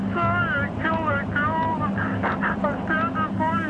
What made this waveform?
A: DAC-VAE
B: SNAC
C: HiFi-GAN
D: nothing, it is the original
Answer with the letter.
D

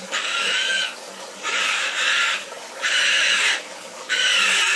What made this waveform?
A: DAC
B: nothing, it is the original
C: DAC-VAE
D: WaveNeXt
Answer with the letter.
A